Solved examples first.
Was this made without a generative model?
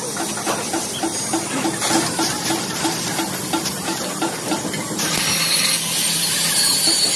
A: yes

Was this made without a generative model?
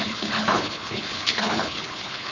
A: no